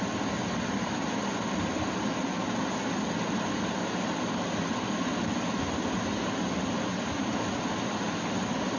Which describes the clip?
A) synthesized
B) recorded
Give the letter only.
B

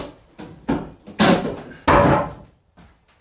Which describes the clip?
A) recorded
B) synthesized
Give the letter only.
A